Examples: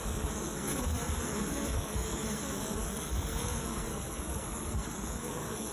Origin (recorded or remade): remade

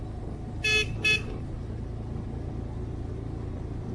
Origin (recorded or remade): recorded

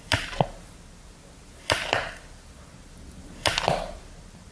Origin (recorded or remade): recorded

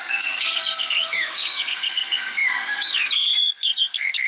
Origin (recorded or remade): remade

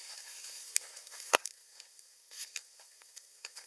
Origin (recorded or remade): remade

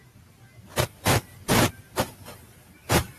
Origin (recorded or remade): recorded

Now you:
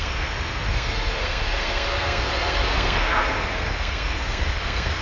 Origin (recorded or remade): remade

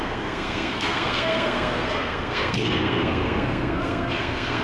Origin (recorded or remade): remade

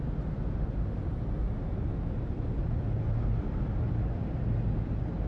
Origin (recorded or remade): recorded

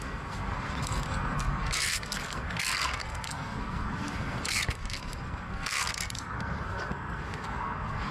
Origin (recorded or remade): remade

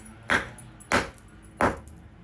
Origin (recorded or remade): recorded